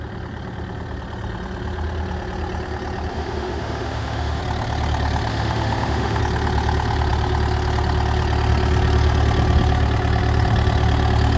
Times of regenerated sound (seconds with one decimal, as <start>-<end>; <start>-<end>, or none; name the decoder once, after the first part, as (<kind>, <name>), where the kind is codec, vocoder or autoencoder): 3.1-4.4 (autoencoder, DAC-VAE); 5.3-6.2